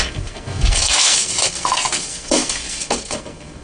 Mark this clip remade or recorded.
remade